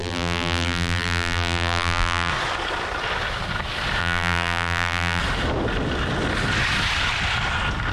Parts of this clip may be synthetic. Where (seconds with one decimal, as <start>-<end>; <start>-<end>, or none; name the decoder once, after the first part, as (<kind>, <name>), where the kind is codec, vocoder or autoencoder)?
0.0-2.3 (vocoder, BigVGAN v2); 4.0-5.2